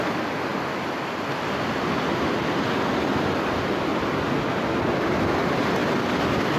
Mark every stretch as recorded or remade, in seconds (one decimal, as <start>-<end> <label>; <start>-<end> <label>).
0.0-6.6 recorded